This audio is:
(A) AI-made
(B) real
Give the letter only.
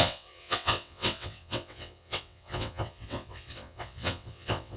A